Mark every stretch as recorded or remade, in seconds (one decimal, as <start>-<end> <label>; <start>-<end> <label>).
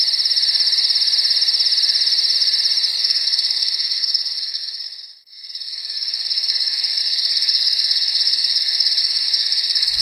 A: 0.0-3.0 recorded; 3.0-10.0 remade